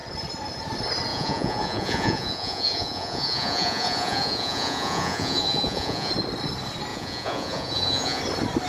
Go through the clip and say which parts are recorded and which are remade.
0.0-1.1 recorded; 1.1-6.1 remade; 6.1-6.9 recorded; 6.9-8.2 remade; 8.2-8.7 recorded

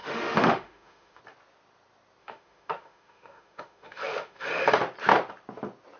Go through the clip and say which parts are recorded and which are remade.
0.0-1.2 remade; 1.2-2.2 recorded; 2.2-4.7 remade; 4.7-6.0 recorded

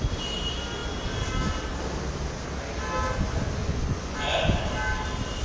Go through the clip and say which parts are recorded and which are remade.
0.0-3.6 recorded; 3.6-4.6 remade; 4.6-5.4 recorded

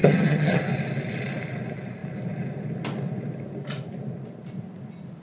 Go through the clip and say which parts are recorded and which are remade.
0.0-0.6 remade; 0.6-5.2 recorded

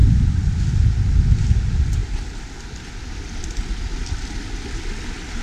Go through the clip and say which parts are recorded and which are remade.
0.0-5.4 recorded

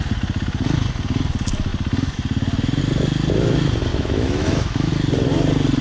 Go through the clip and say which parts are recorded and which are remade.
0.0-3.9 recorded; 3.9-4.9 remade; 4.9-5.8 recorded

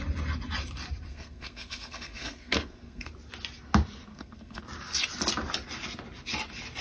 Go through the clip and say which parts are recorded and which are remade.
0.0-1.1 recorded; 1.1-3.1 remade; 3.1-4.1 recorded; 4.1-4.6 remade; 4.6-6.8 recorded

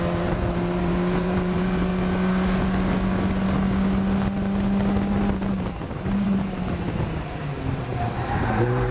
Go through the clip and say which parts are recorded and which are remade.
0.0-1.9 remade; 1.9-5.7 recorded; 5.7-8.9 remade